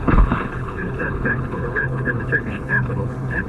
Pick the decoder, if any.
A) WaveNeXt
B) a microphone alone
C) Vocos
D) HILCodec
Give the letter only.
D